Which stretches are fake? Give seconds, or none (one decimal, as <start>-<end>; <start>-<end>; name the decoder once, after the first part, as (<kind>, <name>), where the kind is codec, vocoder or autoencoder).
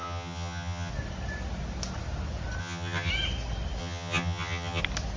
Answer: 0.0-0.9 (vocoder, HiFi-GAN); 2.6-3.1; 3.8-4.8